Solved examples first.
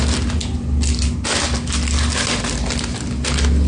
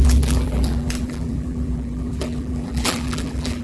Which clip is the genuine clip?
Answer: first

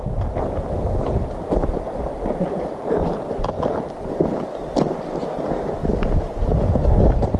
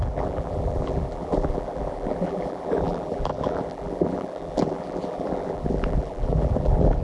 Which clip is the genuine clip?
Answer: first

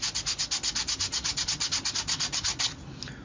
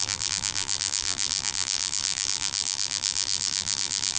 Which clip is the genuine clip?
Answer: first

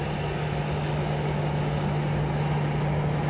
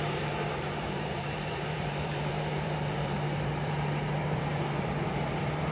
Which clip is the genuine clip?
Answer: first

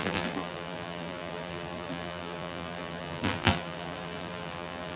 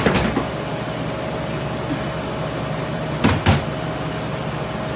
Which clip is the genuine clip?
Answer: second